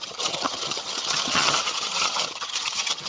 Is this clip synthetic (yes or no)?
yes